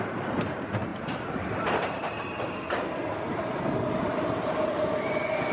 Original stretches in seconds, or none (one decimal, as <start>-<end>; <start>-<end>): 0.0-5.5